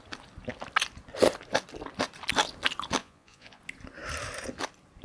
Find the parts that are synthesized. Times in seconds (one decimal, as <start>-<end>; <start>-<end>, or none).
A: 3.0-3.6